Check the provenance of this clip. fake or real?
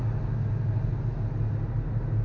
real